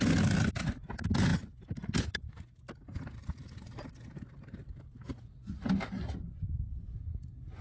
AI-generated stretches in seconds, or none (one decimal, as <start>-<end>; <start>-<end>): none